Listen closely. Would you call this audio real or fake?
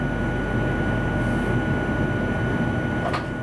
real